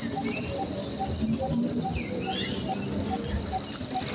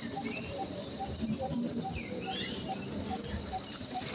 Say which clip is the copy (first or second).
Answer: second